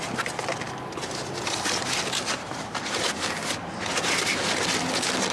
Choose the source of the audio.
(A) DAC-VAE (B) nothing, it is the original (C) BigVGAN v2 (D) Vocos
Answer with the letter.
B